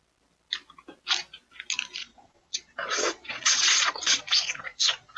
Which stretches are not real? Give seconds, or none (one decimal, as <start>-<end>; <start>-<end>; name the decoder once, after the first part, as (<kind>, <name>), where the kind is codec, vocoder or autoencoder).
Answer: 2.0-5.2 (vocoder, Vocos)